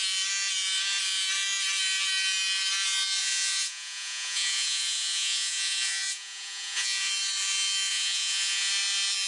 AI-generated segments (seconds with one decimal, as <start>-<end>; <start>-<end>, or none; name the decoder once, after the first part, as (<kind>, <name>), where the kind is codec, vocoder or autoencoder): 3.2-7.1 (vocoder, Vocos); 7.9-8.7